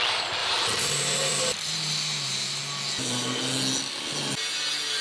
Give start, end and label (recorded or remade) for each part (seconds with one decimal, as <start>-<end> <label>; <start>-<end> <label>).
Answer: 0.0-0.4 recorded; 0.4-2.6 remade; 2.6-5.0 recorded